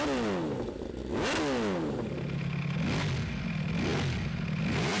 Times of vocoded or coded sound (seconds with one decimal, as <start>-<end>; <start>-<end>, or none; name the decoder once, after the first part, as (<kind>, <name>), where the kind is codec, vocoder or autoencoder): none

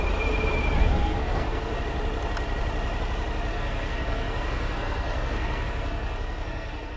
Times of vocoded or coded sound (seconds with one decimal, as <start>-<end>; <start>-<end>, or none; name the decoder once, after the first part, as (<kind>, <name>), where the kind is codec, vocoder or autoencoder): 0.8-1.8 (codec, SNAC); 3.5-7.0

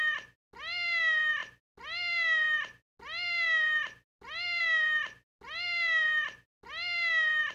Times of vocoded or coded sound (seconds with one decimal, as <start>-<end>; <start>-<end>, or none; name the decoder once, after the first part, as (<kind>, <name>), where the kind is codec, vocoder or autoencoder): none

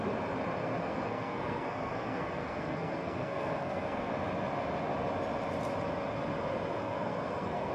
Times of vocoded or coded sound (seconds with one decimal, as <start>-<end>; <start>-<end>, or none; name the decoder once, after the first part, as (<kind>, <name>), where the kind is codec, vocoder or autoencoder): 0.6-4.1 (codec, SNAC); 6.8-7.7

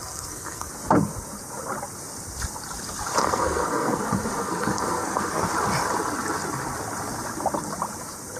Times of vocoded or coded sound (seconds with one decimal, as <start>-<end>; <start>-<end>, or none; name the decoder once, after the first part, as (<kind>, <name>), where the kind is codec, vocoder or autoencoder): 0.0-0.7 (codec, SNAC); 3.2-4.0; 4.4-5.5

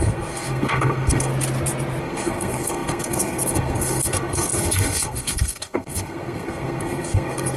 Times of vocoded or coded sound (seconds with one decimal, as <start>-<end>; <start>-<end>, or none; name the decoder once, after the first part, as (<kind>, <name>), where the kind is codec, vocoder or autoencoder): 0.0-1.3 (codec, SNAC); 2.0-7.6